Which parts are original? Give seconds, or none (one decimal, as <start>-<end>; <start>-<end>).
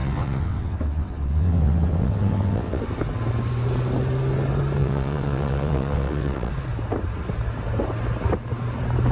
2.8-4.8; 6.5-9.1